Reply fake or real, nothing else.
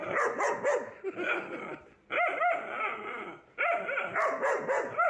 real